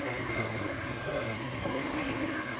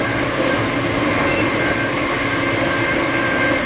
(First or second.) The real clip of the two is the second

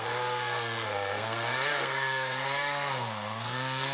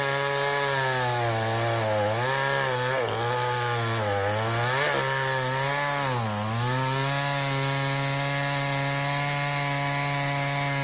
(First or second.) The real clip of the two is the second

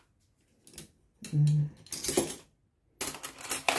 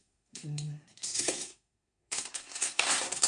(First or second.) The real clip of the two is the first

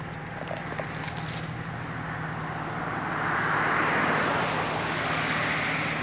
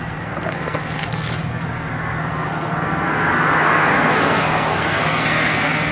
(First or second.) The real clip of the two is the first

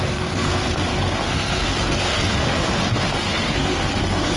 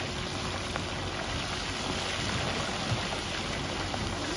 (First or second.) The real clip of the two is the second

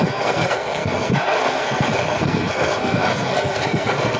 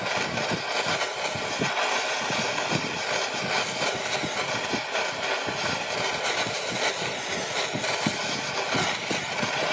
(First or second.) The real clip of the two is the second